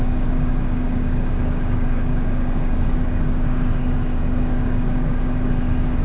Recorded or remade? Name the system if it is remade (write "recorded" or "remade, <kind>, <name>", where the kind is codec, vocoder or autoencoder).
remade, codec, DAC